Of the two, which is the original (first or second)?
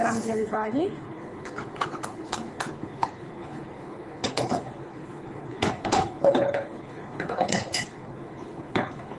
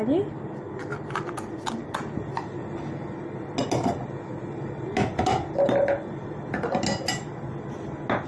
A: second